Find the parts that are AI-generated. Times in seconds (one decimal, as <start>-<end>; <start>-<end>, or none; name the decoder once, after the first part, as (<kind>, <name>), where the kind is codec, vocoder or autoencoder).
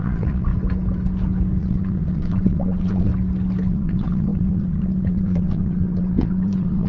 0.0-0.5 (vocoder, WaveNeXt); 1.6-3.1; 3.7-6.9